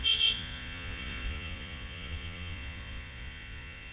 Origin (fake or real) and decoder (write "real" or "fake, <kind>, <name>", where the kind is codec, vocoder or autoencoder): fake, vocoder, Vocos